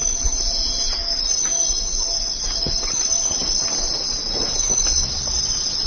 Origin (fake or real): real